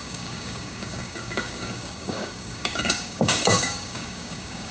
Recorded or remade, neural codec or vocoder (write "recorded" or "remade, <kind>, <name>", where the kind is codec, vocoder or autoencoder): remade, codec, DAC